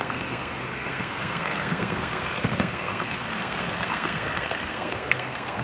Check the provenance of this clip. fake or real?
fake